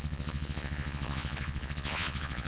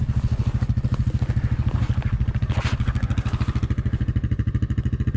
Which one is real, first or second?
second